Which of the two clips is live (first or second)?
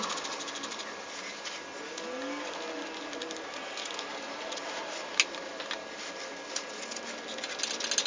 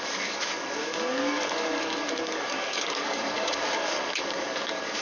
first